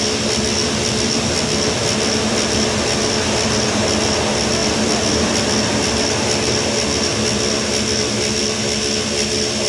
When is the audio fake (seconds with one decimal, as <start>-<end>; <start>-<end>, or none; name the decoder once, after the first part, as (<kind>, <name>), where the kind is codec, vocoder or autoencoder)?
none